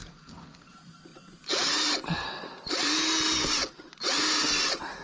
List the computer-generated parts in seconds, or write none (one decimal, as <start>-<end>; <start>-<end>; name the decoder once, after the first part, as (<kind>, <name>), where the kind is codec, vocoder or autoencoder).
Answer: none